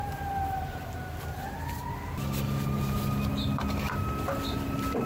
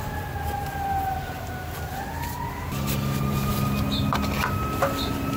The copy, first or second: first